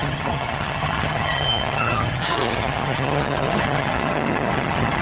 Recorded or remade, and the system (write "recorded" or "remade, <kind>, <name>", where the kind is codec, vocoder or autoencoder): remade, vocoder, HiFi-GAN